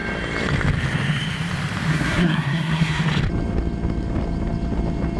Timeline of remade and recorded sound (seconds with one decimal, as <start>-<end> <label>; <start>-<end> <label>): 0.0-1.9 recorded; 1.9-3.0 remade; 3.0-5.2 recorded